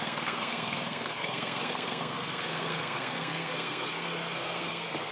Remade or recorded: remade